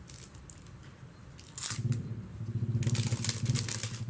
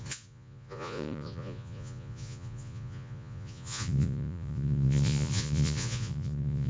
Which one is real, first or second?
first